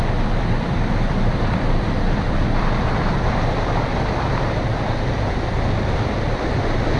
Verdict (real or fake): fake